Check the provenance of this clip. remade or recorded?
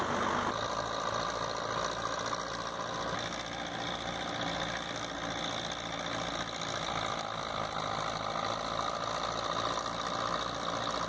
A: recorded